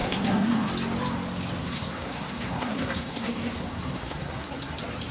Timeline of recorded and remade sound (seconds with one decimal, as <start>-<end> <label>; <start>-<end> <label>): 0.0-0.7 remade; 0.7-1.6 recorded; 1.6-4.5 remade; 4.5-5.1 recorded